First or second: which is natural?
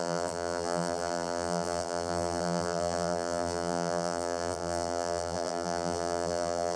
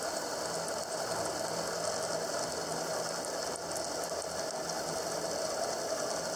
second